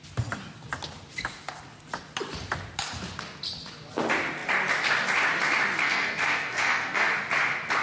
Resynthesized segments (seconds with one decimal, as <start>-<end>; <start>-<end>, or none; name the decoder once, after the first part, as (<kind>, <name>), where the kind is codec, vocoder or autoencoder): 5.8-7.1 (codec, SNAC)